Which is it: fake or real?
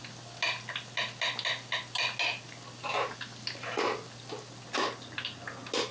real